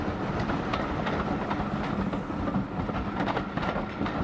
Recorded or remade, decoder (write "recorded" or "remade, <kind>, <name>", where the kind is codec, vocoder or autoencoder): recorded